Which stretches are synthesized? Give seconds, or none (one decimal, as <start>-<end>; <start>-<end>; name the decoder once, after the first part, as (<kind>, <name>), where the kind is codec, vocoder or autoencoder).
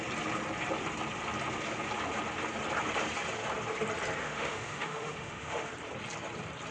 4.2-5.7 (autoencoder, DAC-VAE)